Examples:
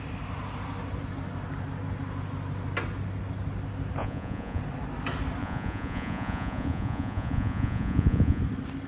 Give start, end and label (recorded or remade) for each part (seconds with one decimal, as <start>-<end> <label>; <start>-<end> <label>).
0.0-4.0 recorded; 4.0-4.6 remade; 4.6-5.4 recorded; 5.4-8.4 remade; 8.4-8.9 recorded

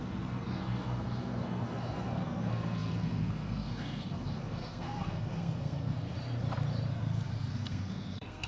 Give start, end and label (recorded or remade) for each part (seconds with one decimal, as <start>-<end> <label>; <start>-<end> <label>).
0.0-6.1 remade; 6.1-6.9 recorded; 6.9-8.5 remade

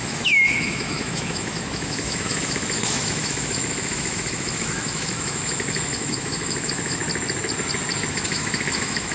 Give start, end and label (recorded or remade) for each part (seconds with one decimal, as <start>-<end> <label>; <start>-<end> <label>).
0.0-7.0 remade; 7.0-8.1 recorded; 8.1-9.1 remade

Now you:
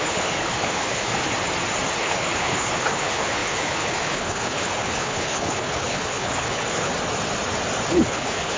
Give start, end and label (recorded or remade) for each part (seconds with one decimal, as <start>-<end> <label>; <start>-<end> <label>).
0.0-1.1 remade; 1.1-2.0 recorded; 2.0-6.9 remade; 6.9-7.9 recorded; 7.9-8.6 remade

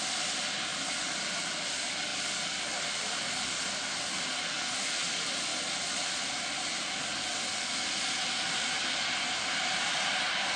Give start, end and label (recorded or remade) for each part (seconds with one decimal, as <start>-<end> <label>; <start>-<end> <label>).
0.0-10.6 recorded